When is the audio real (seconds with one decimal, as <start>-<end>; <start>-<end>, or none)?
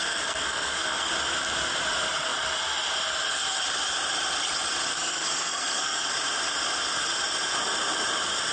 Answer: 1.1-4.9; 6.1-8.5